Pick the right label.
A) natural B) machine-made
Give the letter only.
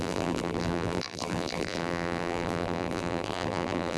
B